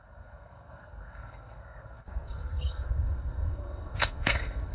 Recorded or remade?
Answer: remade